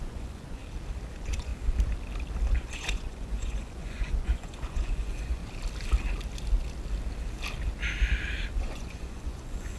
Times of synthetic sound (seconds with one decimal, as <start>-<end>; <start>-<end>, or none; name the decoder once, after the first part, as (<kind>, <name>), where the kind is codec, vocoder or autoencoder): 0.0-0.6 (vocoder, Vocos); 1.1-1.5; 2.5-5.4; 8.5-9.8